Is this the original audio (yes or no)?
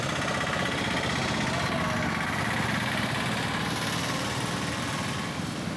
yes